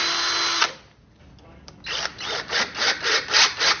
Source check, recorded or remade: recorded